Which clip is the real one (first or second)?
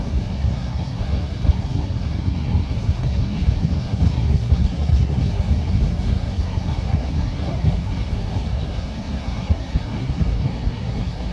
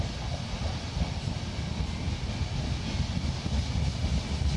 second